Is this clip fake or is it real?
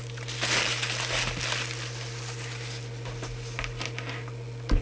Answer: real